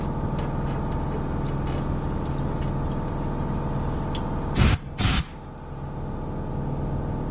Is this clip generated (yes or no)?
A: no